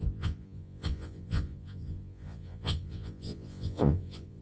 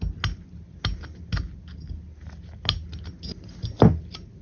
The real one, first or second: second